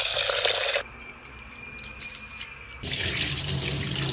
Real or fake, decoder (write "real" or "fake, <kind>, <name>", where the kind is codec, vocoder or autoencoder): real